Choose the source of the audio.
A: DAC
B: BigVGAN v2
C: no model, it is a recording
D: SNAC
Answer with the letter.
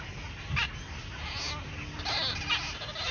C